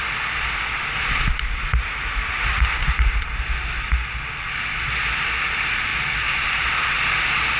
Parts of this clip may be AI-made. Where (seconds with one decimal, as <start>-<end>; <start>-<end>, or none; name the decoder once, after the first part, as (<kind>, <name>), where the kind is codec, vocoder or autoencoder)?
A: none